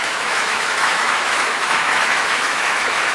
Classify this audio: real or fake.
fake